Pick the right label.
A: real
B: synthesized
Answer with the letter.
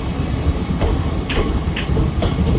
A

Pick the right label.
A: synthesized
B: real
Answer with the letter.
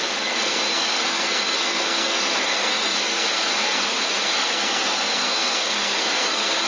A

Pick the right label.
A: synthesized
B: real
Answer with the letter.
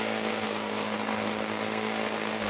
A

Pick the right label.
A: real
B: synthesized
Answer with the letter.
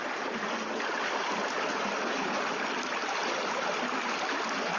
A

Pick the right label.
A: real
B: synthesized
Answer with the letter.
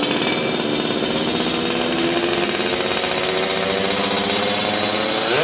A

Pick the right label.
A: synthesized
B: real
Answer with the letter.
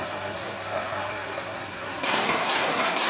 A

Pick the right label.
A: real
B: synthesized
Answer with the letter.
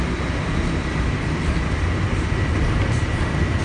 A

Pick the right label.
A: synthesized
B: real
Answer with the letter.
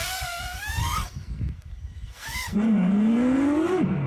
A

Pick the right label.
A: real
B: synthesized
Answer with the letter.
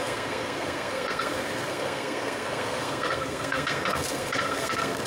B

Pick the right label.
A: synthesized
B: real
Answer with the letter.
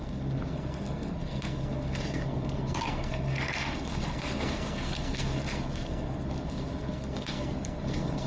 A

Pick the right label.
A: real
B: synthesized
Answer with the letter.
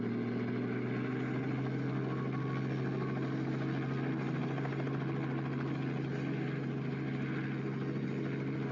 A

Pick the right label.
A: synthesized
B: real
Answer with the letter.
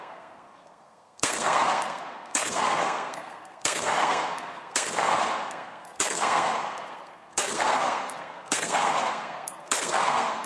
A